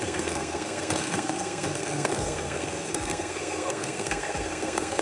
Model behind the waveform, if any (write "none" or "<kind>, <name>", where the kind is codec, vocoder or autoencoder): codec, SNAC